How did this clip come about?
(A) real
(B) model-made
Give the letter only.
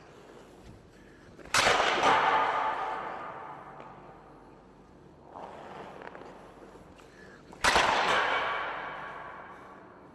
A